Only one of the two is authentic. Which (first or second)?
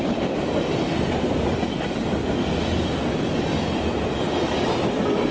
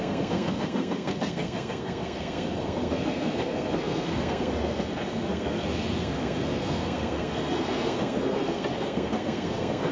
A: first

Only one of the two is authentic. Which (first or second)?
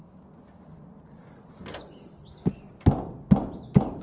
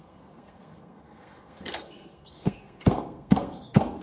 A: first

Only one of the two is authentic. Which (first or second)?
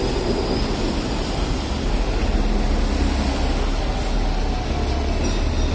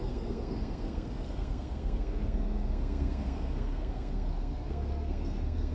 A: first